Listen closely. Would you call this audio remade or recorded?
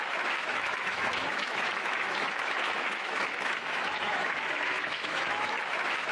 remade